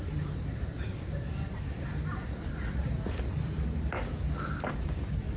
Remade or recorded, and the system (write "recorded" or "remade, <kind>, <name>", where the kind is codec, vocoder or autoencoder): recorded